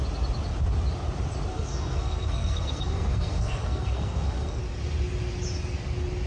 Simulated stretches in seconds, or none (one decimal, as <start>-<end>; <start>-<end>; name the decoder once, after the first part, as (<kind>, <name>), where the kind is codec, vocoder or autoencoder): 1.5-4.6 (codec, SNAC)